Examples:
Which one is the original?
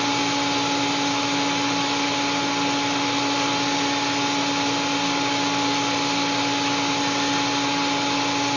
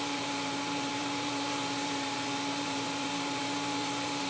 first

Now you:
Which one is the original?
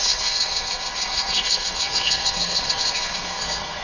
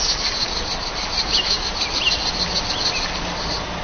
second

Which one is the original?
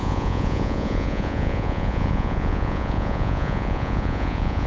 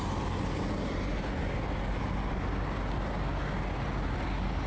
second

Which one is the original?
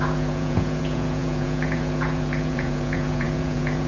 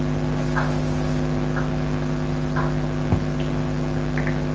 second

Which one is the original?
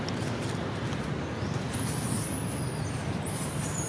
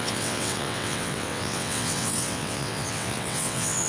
first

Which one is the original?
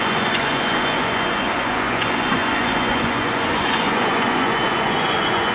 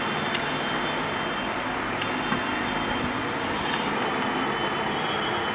second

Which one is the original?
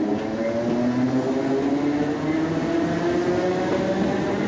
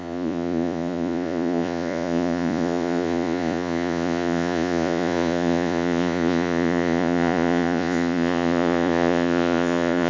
first